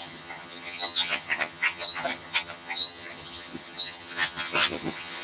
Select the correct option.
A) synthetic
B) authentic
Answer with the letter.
A